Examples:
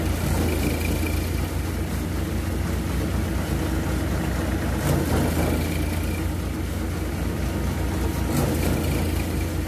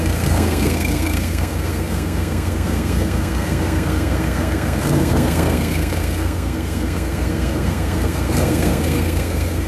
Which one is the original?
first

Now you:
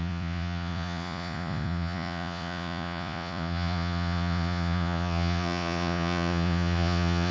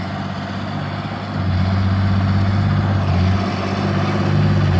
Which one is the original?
second